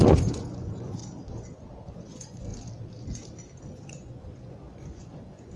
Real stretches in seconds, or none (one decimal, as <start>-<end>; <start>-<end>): 1.0-1.9; 2.5-3.6